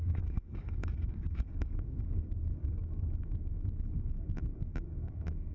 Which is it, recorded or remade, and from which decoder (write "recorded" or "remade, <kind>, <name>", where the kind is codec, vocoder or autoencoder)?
remade, codec, DAC